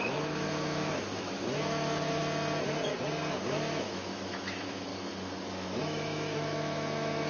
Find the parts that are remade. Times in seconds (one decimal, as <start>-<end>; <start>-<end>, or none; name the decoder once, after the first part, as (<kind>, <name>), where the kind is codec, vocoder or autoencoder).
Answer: 0.0-2.2 (autoencoder, DAC-VAE); 3.3-4.9; 5.8-7.3

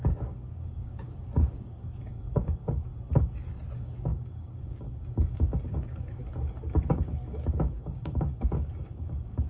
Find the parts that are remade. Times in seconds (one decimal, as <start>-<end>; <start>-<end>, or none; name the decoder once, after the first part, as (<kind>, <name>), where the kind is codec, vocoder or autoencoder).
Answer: 0.0-2.9 (codec, DAC); 3.5-6.2; 6.8-9.5

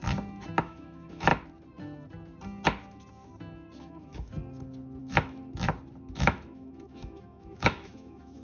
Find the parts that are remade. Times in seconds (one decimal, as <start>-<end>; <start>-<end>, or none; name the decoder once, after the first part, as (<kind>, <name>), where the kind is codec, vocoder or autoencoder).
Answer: 0.6-1.3 (autoencoder, DAC-VAE); 3.8-4.3; 5.0-5.4; 6.1-8.4